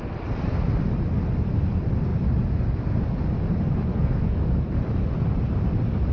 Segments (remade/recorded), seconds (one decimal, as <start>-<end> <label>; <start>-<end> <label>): 0.0-3.9 recorded; 3.9-4.6 remade; 4.6-6.1 recorded